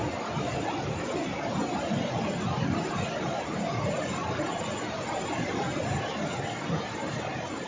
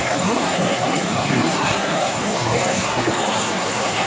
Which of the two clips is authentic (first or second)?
first